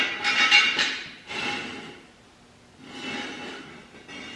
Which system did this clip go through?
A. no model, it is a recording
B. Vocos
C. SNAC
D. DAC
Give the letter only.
A